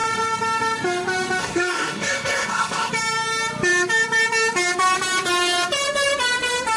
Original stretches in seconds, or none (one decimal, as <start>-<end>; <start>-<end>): 0.0-1.4; 2.9-6.8